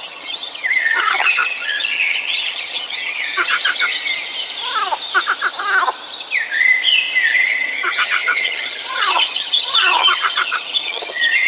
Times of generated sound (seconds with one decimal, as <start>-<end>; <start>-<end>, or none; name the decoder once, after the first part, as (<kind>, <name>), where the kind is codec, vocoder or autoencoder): 0.0-3.9 (vocoder, HiFi-GAN); 7.3-11.5